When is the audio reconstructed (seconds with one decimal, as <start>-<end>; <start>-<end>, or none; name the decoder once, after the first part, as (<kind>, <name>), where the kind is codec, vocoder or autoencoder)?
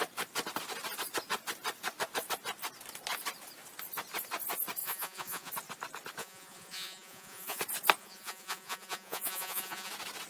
4.8-5.5 (vocoder, Vocos); 6.2-7.6; 8.0-9.9